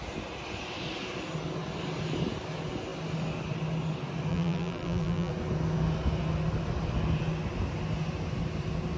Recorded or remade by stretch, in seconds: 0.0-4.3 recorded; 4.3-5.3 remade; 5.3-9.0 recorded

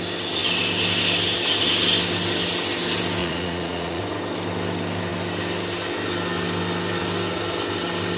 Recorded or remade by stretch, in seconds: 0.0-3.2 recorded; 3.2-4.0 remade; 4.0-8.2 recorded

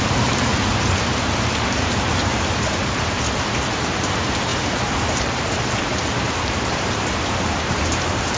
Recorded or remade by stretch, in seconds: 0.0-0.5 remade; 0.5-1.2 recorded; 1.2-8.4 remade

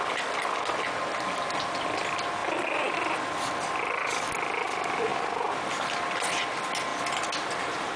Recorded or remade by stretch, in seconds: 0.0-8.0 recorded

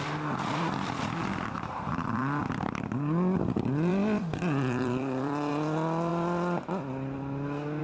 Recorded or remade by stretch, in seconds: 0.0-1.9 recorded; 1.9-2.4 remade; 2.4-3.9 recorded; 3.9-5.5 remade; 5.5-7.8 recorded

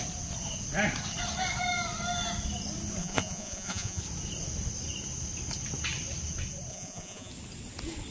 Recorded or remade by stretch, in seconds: 0.0-3.0 recorded; 3.0-4.0 remade; 4.0-6.7 recorded; 6.7-7.3 remade; 7.3-8.1 recorded